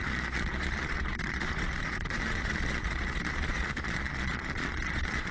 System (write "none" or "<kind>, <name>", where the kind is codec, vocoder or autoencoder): vocoder, Vocos